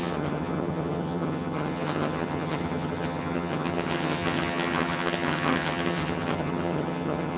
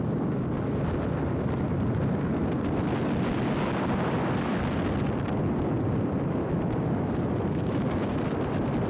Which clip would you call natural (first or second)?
second